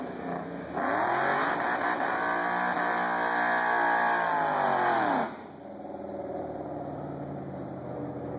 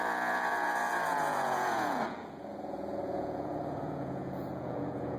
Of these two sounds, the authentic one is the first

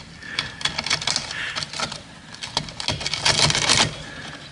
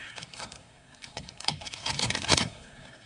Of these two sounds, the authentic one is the first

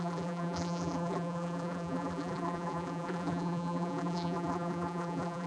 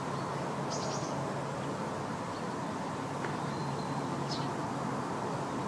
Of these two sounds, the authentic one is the second